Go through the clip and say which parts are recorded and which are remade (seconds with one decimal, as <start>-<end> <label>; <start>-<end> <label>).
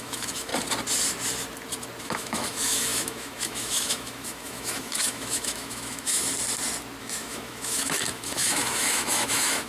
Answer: 0.0-0.5 remade; 0.5-2.0 recorded; 2.0-6.3 remade; 6.3-7.0 recorded; 7.0-9.7 remade